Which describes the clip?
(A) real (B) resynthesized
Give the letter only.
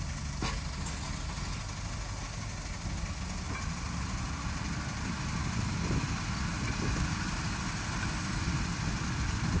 A